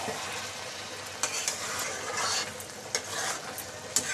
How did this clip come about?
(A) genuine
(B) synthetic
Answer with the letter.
A